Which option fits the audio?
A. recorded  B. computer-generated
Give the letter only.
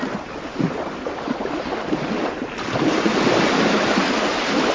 A